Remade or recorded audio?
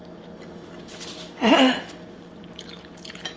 recorded